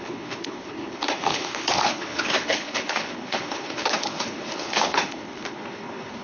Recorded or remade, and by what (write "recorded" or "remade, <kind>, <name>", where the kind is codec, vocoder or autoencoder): remade, codec, HILCodec